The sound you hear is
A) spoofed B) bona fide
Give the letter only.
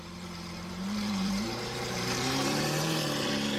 A